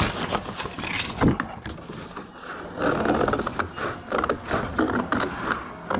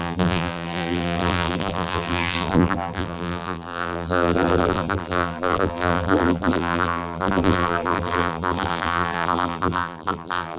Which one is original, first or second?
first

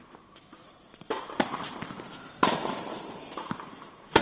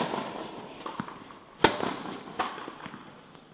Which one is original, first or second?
second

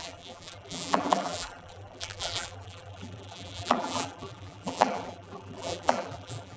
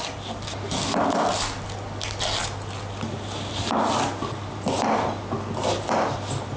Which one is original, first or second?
second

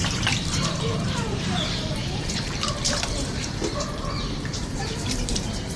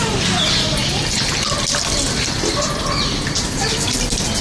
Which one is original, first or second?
second